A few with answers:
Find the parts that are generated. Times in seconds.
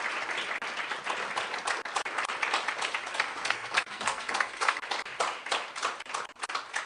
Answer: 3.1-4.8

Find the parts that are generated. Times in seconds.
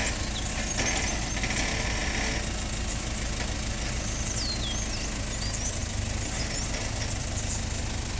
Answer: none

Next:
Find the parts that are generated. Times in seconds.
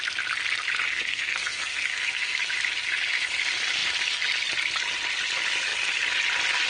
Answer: 0.9-2.4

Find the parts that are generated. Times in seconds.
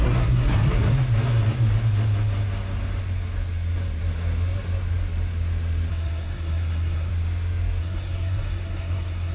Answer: 0.0-0.9; 5.9-7.1; 7.8-9.3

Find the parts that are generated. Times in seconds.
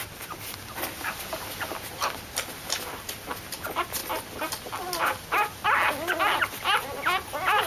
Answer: none